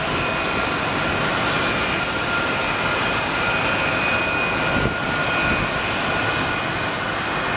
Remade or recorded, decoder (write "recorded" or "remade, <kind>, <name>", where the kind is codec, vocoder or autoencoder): recorded